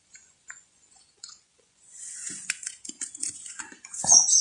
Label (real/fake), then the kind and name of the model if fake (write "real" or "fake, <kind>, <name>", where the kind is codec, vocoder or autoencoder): fake, vocoder, Vocos